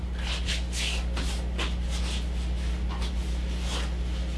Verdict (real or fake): real